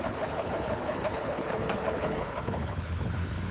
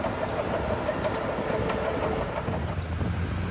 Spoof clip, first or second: first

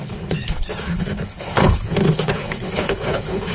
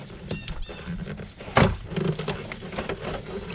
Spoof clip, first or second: first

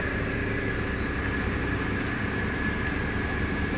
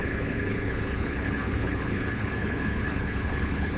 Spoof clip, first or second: second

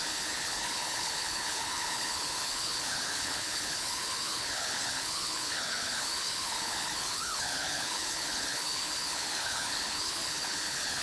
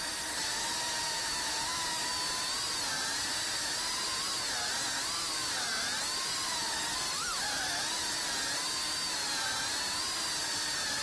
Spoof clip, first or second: first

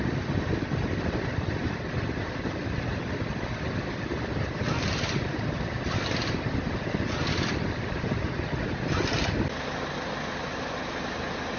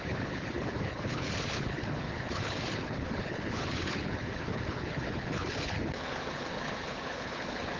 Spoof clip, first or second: second